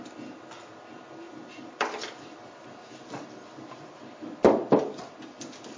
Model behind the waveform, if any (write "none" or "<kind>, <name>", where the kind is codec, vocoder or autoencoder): none